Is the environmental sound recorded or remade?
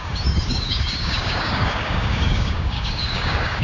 remade